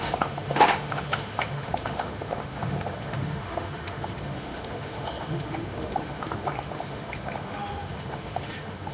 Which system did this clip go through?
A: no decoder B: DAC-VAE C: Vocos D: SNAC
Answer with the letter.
B